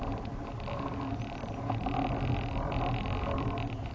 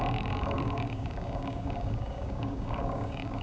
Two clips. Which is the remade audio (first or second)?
second